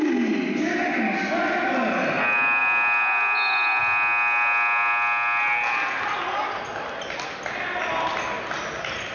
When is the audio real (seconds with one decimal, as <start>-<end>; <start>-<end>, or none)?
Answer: 0.0-9.1